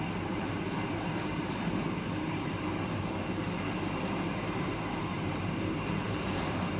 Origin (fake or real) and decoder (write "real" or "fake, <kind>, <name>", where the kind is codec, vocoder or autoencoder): fake, vocoder, BigVGAN v2